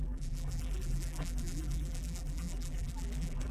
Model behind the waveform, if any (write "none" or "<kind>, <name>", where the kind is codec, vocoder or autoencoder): vocoder, BigVGAN v2